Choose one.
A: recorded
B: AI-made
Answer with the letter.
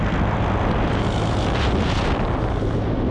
A